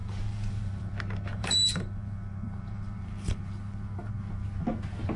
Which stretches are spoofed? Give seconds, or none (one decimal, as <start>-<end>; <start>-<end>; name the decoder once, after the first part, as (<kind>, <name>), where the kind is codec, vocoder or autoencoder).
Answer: 0.0-0.9 (vocoder, BigVGAN v2); 1.3-4.1